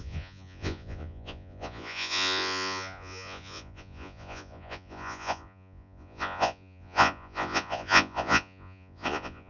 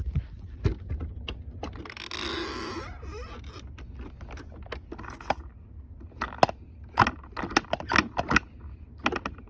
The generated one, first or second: first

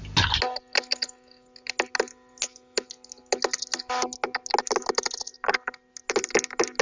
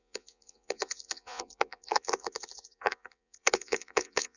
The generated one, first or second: second